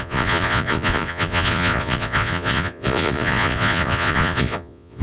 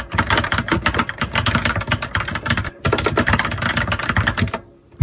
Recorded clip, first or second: second